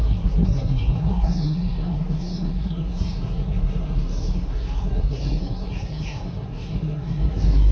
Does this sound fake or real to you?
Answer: fake